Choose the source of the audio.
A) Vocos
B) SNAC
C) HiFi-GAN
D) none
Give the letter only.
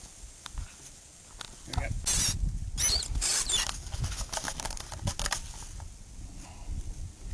D